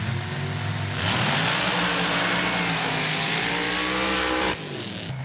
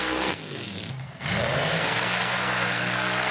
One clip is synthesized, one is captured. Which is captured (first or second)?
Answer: first